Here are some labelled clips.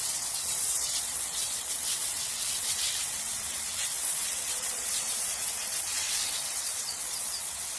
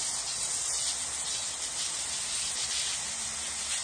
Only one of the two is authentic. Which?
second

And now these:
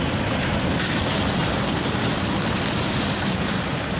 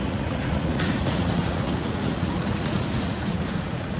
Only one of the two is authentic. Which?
first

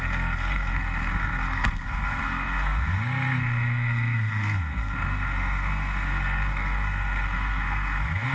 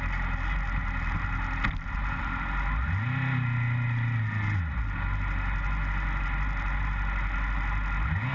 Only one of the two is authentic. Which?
second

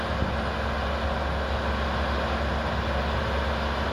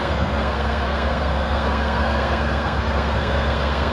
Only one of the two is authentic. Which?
first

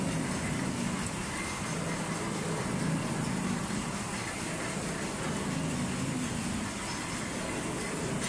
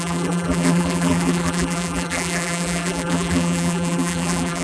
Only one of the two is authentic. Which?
first